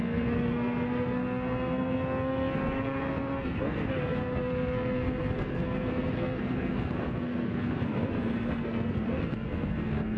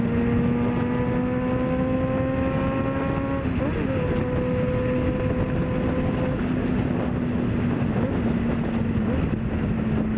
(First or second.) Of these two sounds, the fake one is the first